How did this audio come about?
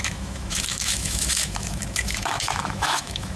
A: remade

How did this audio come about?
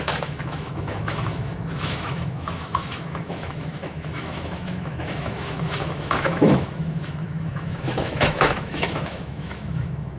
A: remade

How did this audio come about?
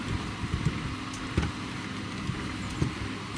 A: recorded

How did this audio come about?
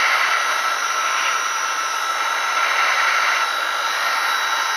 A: recorded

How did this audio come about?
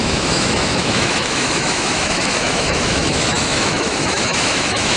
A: remade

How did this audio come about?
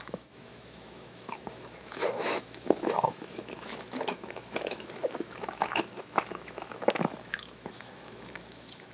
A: remade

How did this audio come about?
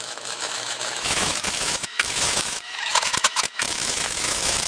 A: remade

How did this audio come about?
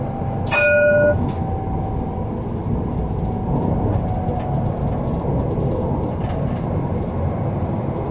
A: recorded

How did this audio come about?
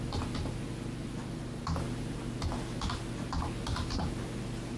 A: recorded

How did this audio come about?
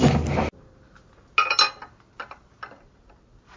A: recorded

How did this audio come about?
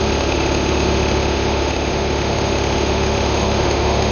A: remade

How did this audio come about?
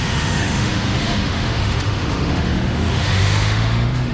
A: remade